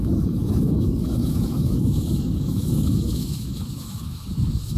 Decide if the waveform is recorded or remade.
remade